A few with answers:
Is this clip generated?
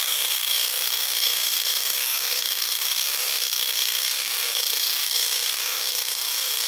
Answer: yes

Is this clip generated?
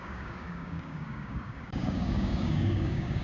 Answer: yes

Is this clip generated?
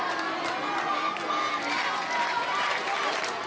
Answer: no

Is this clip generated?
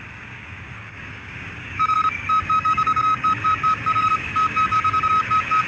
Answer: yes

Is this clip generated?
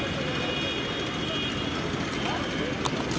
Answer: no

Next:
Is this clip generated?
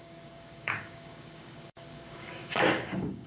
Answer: yes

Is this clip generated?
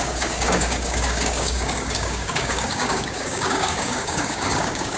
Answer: yes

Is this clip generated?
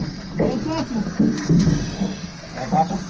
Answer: no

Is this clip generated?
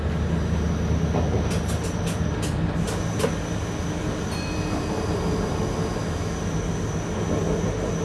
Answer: no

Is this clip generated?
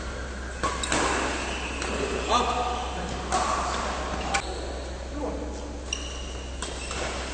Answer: no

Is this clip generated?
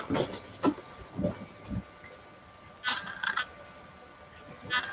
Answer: no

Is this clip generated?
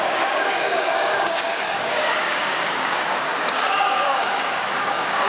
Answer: yes